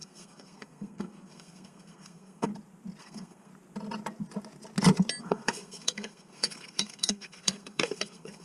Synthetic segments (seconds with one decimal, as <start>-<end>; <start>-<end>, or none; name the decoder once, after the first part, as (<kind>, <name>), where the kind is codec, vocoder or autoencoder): 0.0-2.5 (codec, SNAC); 3.0-3.5; 5.2-8.4